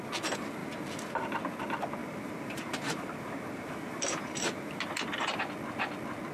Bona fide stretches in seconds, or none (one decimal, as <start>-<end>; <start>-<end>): 0.0-2.0; 5.4-6.3